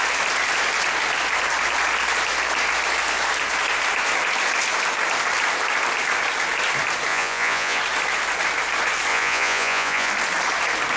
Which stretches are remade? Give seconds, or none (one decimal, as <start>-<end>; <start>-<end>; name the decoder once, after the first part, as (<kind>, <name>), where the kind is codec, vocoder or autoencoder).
7.1-7.8 (vocoder, Vocos); 9.1-10.1